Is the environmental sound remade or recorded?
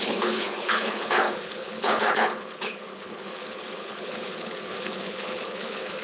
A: remade